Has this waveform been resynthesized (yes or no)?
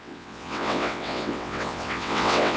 yes